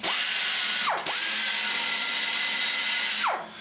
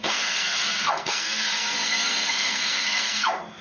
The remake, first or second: second